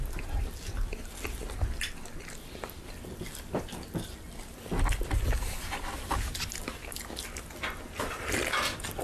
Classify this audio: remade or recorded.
recorded